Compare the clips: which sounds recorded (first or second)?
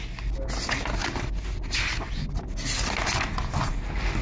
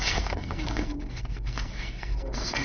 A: first